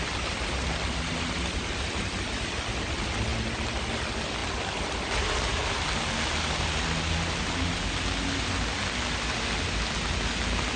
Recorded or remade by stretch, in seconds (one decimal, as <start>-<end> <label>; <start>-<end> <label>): 0.0-10.8 recorded